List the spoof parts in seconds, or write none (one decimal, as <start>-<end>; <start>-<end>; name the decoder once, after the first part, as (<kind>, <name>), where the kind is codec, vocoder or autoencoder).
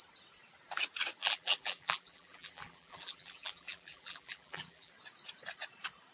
1.2-4.9 (vocoder, BigVGAN v2)